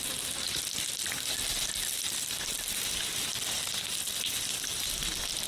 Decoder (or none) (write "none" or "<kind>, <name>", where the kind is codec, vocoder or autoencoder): none